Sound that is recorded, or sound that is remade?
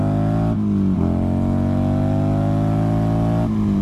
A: recorded